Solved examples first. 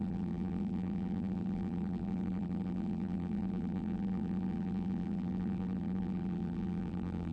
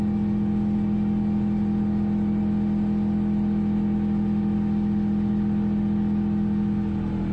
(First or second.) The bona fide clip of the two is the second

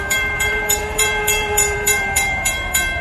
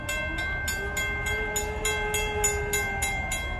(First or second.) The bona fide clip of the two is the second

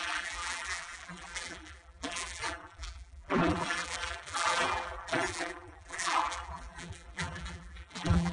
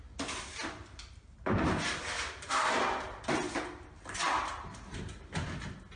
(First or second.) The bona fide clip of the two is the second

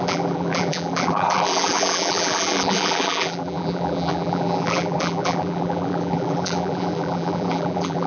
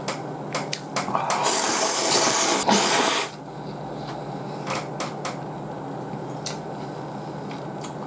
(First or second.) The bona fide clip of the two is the second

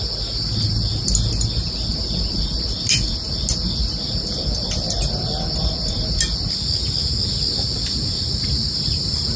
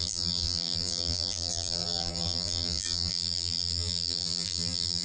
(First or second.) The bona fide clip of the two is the first